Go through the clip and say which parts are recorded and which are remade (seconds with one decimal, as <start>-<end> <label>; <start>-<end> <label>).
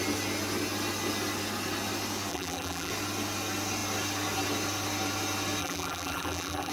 0.0-2.3 recorded; 2.3-2.9 remade; 2.9-5.6 recorded; 5.6-6.7 remade